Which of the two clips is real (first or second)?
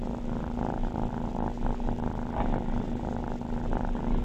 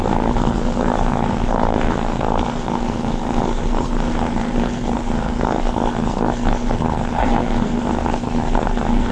first